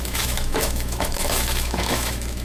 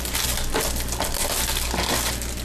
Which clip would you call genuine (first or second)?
second